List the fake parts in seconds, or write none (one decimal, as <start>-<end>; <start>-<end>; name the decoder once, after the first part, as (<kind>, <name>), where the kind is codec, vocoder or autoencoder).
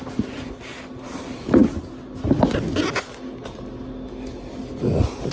none